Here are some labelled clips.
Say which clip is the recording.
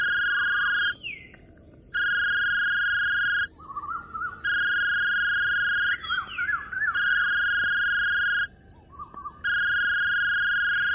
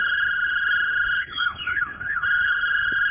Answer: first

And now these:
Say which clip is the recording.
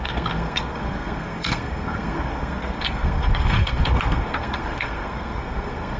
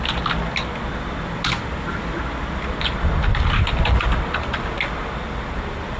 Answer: second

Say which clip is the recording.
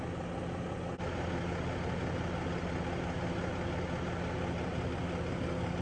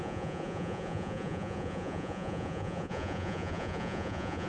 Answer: first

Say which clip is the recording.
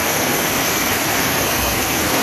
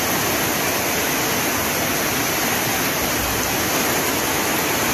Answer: second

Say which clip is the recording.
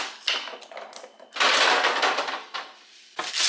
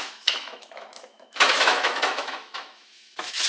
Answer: first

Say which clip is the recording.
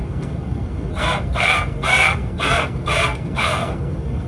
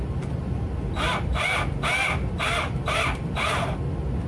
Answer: second